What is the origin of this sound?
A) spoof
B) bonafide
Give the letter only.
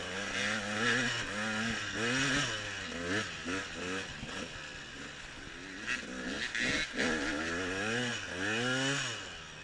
B